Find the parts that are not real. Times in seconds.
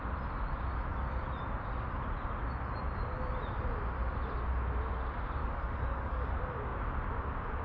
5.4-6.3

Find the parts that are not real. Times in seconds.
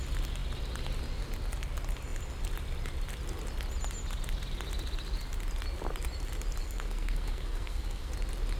6.6-8.1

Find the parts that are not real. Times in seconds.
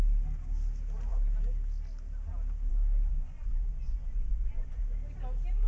3.1-4.8